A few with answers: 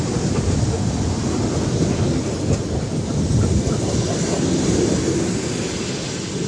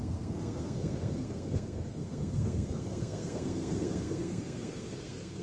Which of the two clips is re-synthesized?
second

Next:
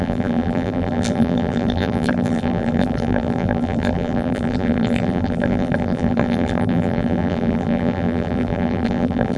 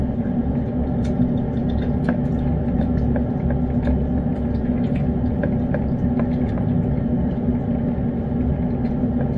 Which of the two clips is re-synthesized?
first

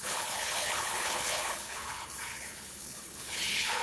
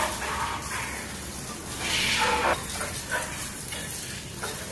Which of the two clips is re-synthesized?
first